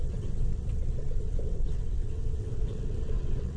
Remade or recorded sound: remade